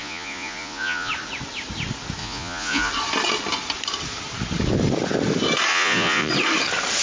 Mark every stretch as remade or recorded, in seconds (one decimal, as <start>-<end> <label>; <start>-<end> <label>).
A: 0.0-1.1 remade; 1.1-2.2 recorded; 2.2-2.9 remade; 2.9-5.7 recorded; 5.7-6.3 remade; 6.3-7.0 recorded